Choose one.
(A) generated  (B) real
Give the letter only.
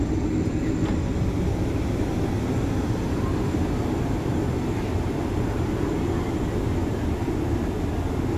B